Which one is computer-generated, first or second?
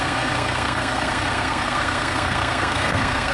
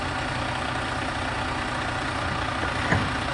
first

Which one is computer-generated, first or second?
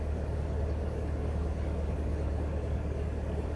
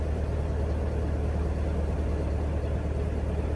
first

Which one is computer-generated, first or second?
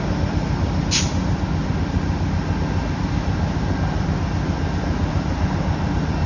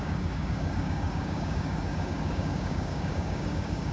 second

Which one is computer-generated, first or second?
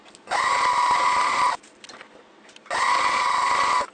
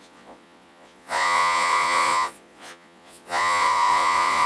second